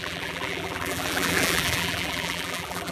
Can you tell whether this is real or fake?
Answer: fake